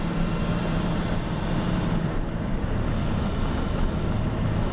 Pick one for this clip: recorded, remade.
recorded